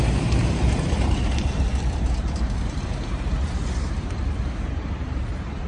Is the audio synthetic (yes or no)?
yes